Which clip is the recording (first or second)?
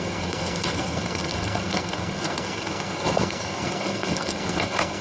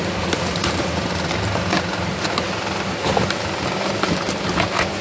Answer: second